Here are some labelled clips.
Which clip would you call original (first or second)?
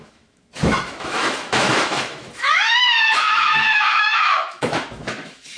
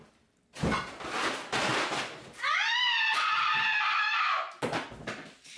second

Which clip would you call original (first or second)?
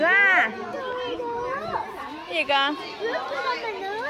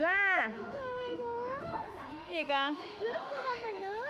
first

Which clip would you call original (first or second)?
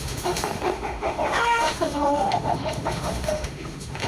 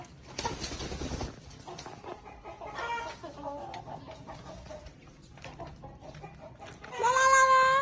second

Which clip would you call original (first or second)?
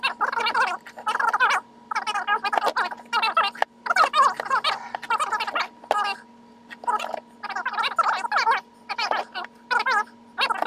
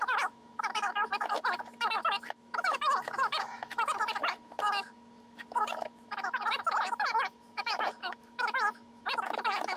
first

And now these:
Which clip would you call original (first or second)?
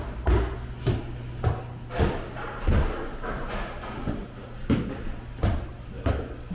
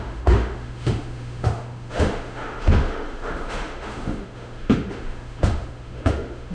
first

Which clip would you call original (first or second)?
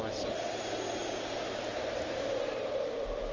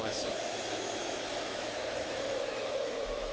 first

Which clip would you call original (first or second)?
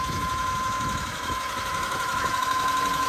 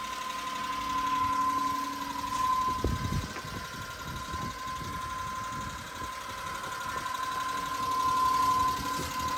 second